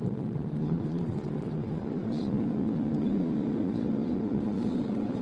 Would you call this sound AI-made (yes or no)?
yes